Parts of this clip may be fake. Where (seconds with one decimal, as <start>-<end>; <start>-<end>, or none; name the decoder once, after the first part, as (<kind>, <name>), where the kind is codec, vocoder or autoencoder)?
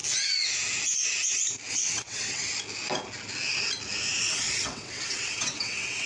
1.7-2.5 (vocoder, WaveNeXt); 4.2-6.1